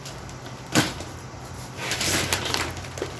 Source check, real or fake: fake